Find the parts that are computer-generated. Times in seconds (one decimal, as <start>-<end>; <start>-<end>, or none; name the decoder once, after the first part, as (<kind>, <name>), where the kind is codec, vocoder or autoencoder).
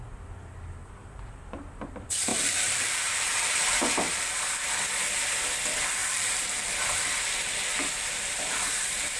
2.3-4.4 (vocoder, BigVGAN v2); 6.0-6.7